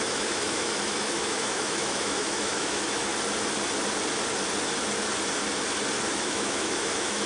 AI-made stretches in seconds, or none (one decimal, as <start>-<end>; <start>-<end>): 0.0-3.1; 6.1-7.3